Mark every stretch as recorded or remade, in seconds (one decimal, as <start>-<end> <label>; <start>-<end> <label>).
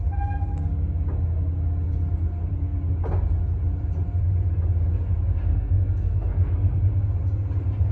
0.0-5.5 recorded; 5.5-6.8 remade; 6.8-7.9 recorded